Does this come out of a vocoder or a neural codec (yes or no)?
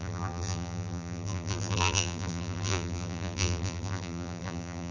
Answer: yes